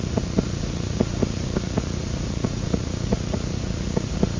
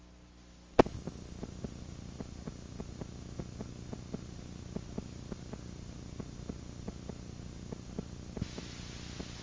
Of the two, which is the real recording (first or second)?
second